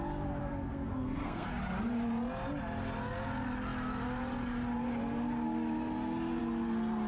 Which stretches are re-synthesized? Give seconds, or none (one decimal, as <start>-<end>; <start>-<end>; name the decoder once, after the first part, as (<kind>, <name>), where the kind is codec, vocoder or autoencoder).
0.4-1.5 (codec, SNAC)